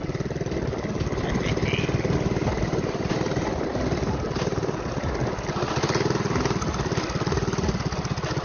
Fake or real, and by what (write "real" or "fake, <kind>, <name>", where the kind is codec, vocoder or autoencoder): real